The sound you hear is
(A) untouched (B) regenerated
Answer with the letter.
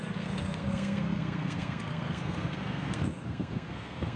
B